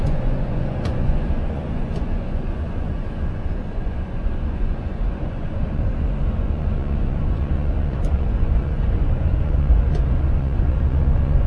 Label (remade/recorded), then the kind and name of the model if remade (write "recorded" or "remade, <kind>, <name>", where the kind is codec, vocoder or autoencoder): remade, vocoder, Vocos